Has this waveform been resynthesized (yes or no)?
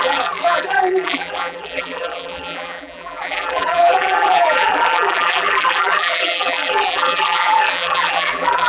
yes